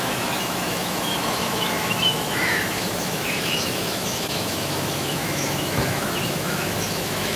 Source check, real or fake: fake